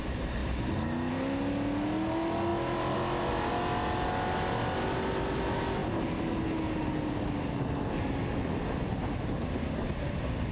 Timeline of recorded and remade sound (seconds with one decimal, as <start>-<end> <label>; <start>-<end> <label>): 0.0-10.5 recorded